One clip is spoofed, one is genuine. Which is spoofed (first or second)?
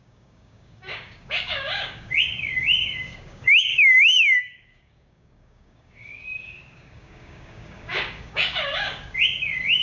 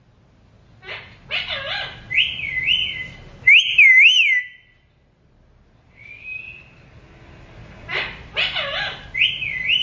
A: first